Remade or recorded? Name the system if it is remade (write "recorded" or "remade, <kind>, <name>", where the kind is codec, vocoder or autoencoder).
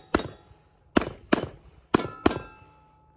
recorded